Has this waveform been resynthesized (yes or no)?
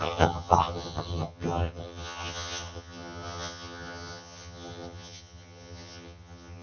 yes